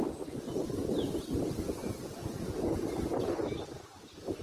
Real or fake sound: real